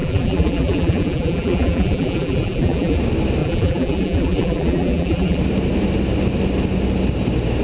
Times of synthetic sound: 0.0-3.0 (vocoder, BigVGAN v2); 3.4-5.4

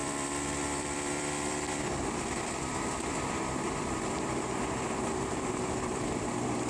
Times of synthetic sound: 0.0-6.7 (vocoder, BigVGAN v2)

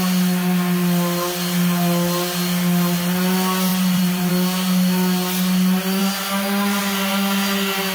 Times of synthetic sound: 3.7-4.3 (vocoder, BigVGAN v2)

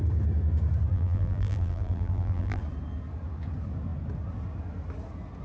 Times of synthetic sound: 0.9-2.6 (vocoder, BigVGAN v2)